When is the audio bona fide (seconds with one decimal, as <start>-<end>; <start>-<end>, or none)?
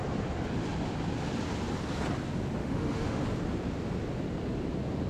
0.0-2.6; 3.2-5.1